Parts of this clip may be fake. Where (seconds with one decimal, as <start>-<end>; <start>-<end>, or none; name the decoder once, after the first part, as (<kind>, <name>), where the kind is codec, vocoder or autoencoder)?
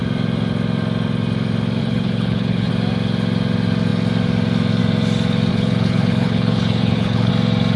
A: 1.8-2.7 (codec, HILCodec); 5.5-7.3